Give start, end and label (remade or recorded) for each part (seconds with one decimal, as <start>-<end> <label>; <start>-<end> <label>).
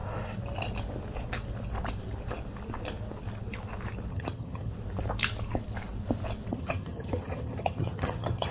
0.0-4.1 recorded; 4.1-4.7 remade; 4.7-6.5 recorded; 6.5-8.5 remade